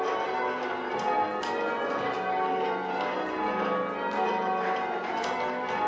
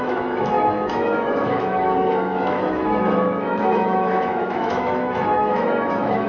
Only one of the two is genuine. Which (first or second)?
first